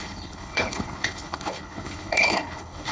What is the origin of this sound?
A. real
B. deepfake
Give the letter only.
B